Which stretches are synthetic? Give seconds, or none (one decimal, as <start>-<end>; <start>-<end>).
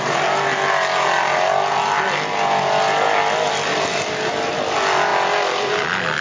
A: none